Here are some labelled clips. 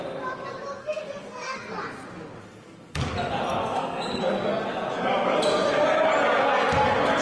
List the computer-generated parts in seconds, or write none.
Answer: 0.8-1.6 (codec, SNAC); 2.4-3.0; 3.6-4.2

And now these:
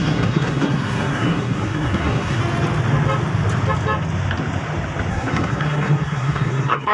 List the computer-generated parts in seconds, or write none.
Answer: 0.0-2.4 (codec, SNAC); 5.1-6.9

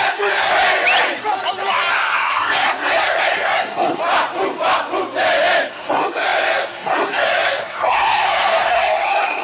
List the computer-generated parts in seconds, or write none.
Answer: 0.0-0.5 (codec, SNAC); 1.9-4.0; 5.7-9.4